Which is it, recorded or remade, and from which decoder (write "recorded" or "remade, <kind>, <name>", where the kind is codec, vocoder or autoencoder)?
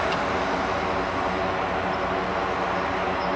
recorded